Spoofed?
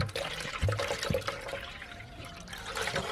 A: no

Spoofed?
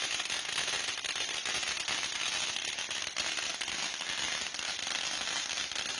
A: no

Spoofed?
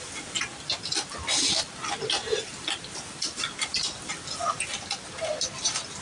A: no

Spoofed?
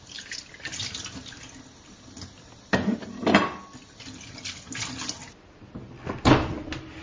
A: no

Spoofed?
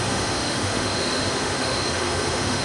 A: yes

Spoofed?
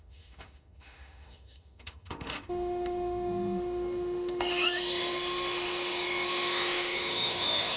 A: yes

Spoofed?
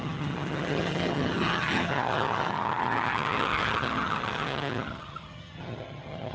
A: yes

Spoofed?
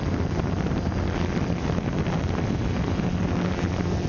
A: no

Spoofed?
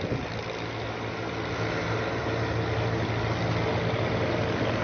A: no